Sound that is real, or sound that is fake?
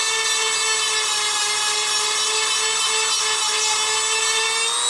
real